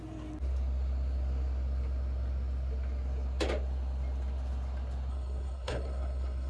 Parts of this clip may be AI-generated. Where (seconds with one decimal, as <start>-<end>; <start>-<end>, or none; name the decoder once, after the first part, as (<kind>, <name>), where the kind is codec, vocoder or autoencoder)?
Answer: 5.1-6.5 (codec, SNAC)